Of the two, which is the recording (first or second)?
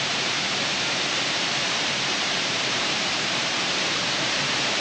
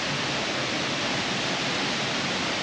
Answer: second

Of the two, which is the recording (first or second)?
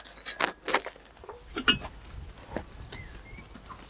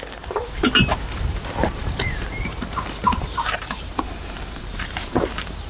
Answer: first